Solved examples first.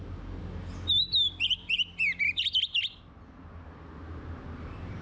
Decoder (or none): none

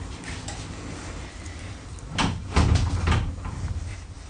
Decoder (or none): vocoder, BigVGAN v2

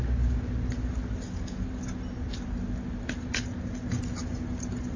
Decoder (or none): none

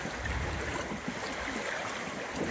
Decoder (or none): none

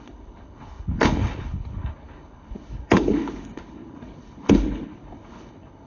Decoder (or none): codec, HILCodec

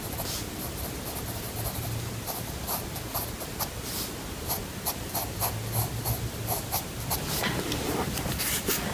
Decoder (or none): none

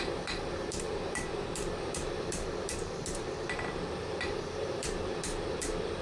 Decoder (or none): vocoder, BigVGAN v2